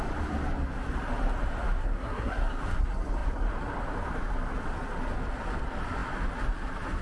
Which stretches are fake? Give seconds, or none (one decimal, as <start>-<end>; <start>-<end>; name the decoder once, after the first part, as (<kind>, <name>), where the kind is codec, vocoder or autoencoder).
1.8-2.6 (codec, SNAC)